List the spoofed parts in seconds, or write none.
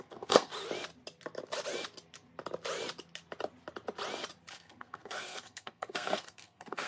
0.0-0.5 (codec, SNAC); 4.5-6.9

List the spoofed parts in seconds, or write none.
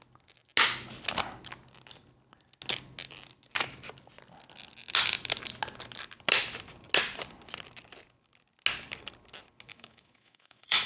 9.7-10.9 (autoencoder, DAC-VAE)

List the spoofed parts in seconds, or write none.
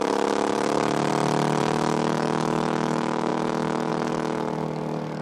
0.0-1.1 (codec, DAC); 1.6-5.2